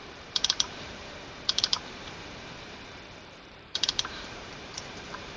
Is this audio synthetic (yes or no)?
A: yes